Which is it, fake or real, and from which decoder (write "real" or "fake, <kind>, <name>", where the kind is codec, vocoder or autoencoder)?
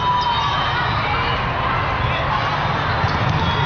real